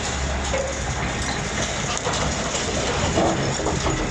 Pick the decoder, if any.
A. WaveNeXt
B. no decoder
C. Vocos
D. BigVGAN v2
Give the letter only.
B